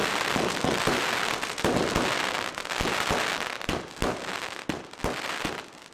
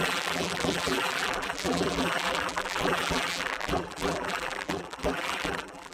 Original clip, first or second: first